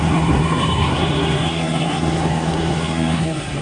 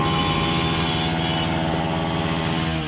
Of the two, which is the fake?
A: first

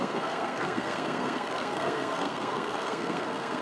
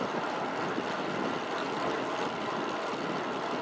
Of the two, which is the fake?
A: first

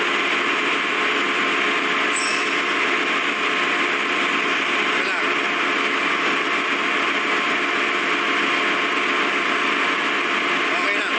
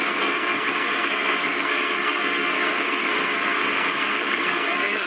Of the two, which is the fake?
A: second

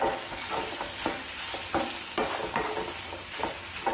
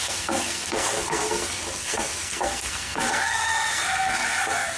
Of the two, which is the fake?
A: second